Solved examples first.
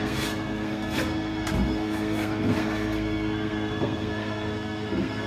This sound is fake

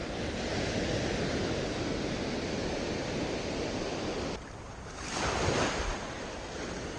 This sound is real